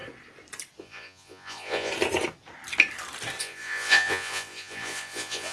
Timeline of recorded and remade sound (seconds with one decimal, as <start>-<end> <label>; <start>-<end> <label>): 0.0-0.8 recorded; 0.8-1.9 remade; 1.9-3.4 recorded; 3.4-5.5 remade